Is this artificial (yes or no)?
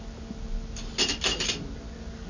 no